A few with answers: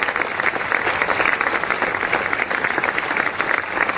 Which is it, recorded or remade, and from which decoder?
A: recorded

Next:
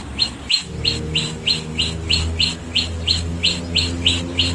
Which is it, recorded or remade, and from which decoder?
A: recorded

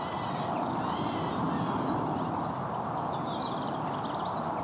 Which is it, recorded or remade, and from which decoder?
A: recorded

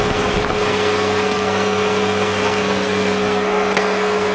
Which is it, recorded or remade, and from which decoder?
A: remade, codec, SNAC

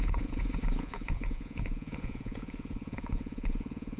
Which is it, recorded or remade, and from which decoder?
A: remade, vocoder, Vocos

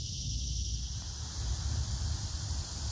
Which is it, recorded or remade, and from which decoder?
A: recorded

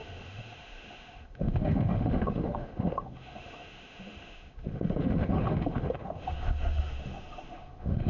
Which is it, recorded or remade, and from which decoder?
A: remade, autoencoder, DAC-VAE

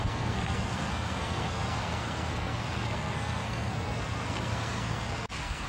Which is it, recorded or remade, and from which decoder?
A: remade, codec, SNAC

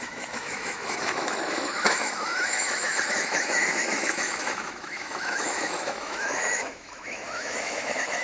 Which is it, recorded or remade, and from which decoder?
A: remade, autoencoder, DAC-VAE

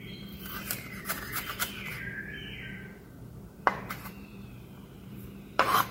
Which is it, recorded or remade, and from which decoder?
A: remade, vocoder, BigVGAN v2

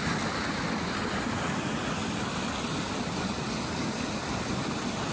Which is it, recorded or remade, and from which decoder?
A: recorded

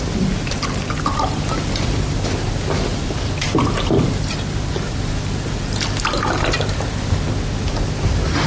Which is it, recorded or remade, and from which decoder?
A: recorded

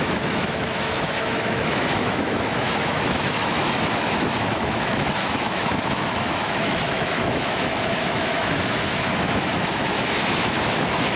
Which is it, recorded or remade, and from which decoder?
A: remade, autoencoder, DAC-VAE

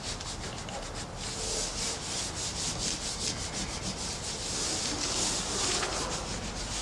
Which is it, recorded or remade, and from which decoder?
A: recorded